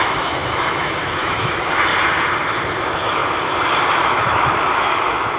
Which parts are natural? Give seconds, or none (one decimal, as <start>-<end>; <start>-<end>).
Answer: 1.9-2.8; 3.2-4.0